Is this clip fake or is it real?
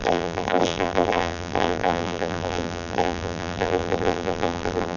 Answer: fake